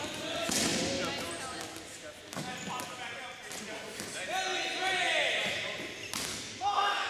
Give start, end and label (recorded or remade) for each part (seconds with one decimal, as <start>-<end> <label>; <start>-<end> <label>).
0.0-6.3 recorded; 6.3-7.1 remade